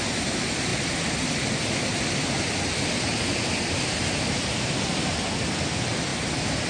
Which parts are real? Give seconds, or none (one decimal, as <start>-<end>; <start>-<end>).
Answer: 0.0-6.7